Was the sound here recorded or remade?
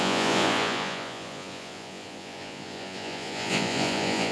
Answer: remade